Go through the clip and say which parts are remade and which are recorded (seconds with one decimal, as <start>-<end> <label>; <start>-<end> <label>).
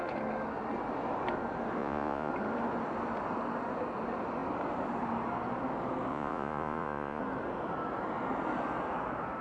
0.0-1.8 recorded; 1.8-2.3 remade; 2.3-6.1 recorded; 6.1-7.2 remade; 7.2-9.4 recorded